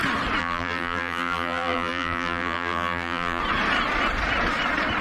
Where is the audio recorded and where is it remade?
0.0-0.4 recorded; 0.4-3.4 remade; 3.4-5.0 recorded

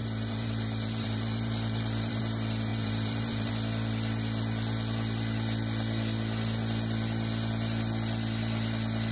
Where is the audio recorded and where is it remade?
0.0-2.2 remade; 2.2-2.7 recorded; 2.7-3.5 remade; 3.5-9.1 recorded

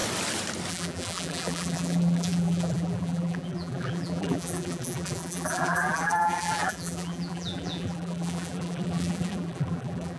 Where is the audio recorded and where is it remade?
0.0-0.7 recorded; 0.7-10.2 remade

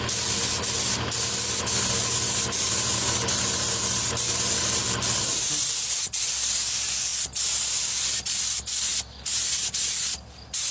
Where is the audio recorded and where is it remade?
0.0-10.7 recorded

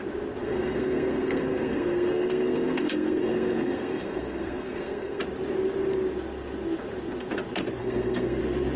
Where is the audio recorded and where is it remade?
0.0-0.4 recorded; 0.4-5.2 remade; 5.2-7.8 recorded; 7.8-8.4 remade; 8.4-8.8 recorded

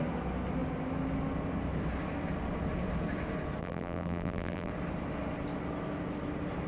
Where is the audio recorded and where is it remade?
0.0-3.6 recorded; 3.6-4.7 remade; 4.7-6.7 recorded